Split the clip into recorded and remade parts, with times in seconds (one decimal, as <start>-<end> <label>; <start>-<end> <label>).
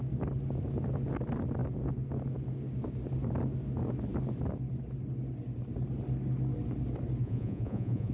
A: 0.0-7.2 recorded; 7.2-8.1 remade